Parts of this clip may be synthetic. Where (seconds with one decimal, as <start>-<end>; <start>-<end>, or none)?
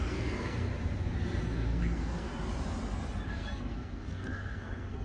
0.0-0.7; 1.4-2.3; 3.3-5.0